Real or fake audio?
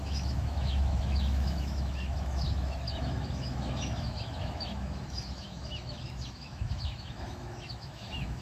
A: fake